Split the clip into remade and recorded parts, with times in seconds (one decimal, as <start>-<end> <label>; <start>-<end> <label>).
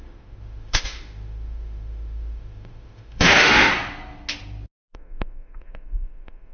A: 0.0-3.7 remade; 3.7-4.9 recorded; 4.9-6.5 remade